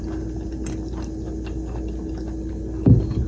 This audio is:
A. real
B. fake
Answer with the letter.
A